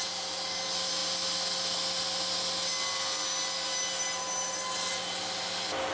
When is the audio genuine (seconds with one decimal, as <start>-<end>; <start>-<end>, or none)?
0.0-5.9